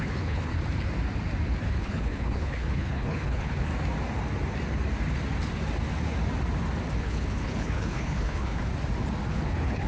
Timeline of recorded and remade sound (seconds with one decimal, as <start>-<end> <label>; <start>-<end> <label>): 0.0-0.5 remade; 0.5-1.6 recorded; 1.6-3.7 remade; 3.7-7.0 recorded; 7.0-8.7 remade; 8.7-9.3 recorded; 9.3-9.9 remade